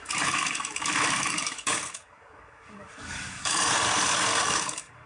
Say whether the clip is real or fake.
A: fake